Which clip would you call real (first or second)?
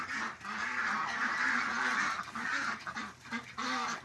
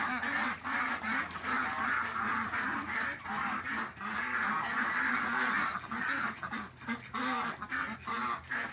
second